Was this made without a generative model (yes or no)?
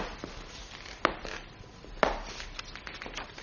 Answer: yes